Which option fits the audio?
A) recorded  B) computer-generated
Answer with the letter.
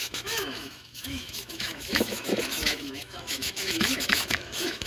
B